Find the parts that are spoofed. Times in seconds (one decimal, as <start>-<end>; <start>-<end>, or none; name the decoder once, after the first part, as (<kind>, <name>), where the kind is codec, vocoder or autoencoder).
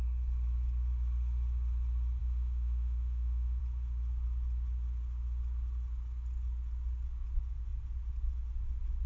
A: 2.2-3.6 (autoencoder, DAC-VAE)